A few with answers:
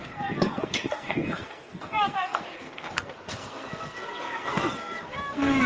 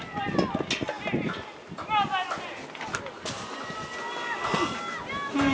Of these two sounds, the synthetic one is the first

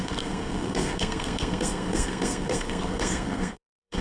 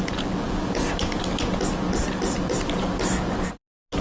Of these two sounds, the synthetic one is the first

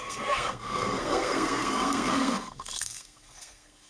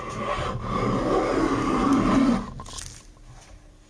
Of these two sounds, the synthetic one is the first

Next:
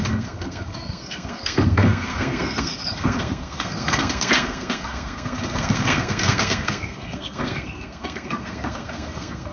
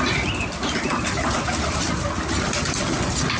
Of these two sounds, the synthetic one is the first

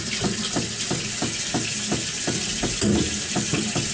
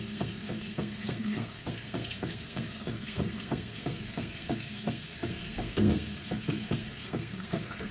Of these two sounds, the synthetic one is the second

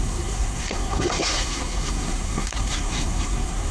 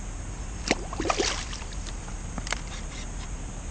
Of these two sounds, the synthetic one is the first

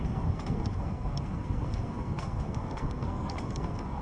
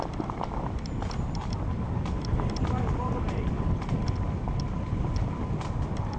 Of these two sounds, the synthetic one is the first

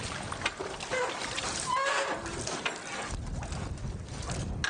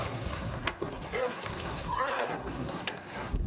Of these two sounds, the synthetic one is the second